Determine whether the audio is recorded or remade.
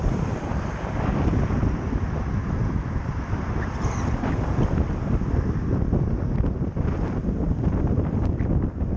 remade